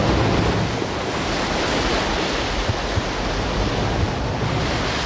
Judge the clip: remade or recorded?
recorded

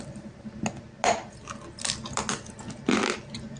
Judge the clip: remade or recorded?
recorded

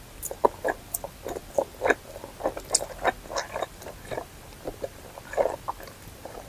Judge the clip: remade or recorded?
recorded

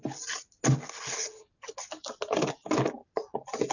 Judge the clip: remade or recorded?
recorded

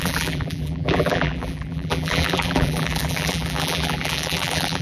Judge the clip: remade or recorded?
remade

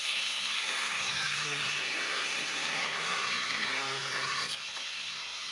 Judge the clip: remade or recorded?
remade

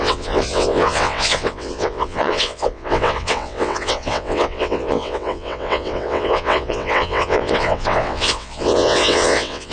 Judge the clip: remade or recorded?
remade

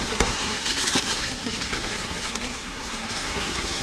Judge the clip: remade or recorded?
remade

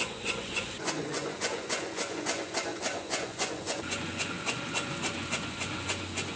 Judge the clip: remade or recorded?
remade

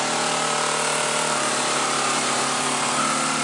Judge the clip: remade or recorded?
remade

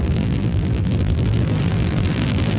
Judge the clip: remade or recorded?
remade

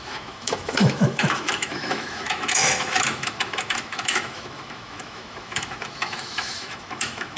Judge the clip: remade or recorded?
remade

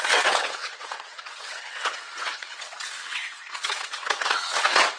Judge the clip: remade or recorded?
remade